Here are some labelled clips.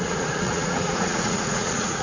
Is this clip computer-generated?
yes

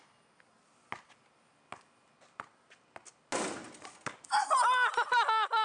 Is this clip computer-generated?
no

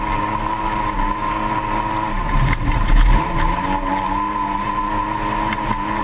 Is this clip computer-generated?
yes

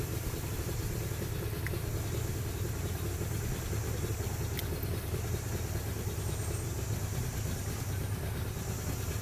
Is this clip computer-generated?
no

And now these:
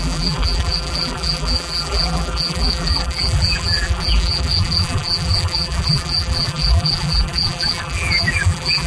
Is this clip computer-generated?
yes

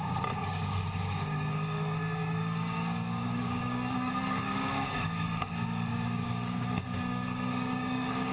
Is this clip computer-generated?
yes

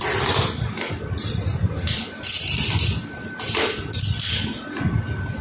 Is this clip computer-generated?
no